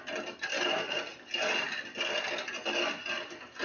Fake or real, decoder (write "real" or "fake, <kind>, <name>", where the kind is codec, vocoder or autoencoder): real